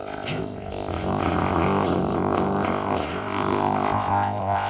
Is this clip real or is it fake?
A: fake